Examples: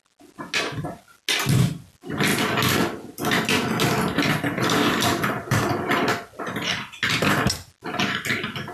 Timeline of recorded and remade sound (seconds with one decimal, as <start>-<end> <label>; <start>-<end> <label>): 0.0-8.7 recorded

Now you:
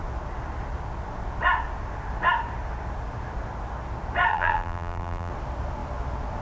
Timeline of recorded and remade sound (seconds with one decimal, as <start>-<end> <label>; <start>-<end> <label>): 0.0-4.3 recorded; 4.3-5.3 remade; 5.3-6.4 recorded

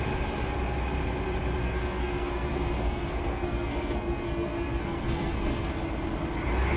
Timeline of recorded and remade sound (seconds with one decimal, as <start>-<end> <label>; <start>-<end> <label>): 0.0-1.6 recorded; 1.6-5.7 remade; 5.7-6.8 recorded

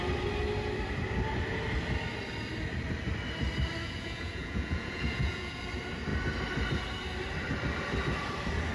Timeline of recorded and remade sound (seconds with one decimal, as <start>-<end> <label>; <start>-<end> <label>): 0.0-3.8 recorded; 3.8-5.6 remade; 5.6-8.7 recorded

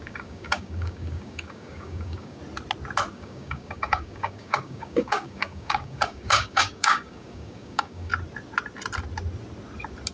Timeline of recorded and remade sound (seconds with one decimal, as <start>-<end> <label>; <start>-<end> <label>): 0.0-2.4 remade; 2.4-3.1 recorded; 3.1-8.1 remade; 8.1-10.1 recorded

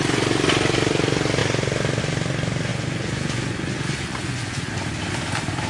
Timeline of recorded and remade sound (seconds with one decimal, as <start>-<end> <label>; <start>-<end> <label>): 0.0-2.7 recorded; 2.7-4.7 remade; 4.7-5.7 recorded

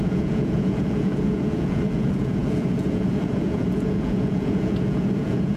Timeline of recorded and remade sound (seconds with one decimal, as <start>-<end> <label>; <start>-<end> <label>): 0.0-5.6 remade

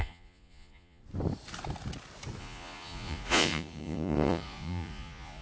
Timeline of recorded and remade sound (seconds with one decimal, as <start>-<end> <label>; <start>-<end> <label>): 0.0-1.0 remade; 1.0-2.4 recorded; 2.4-5.4 remade